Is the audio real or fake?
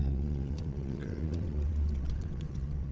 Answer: fake